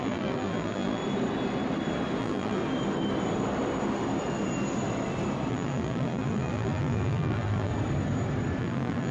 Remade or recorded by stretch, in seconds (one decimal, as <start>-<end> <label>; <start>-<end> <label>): 0.0-1.0 remade; 1.0-2.2 recorded; 2.2-2.6 remade; 2.6-5.5 recorded; 5.5-7.7 remade; 7.7-8.6 recorded; 8.6-9.1 remade